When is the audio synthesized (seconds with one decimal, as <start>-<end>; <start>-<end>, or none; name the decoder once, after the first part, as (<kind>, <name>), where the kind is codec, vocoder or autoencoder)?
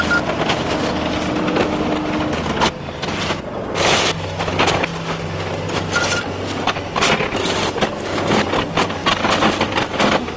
none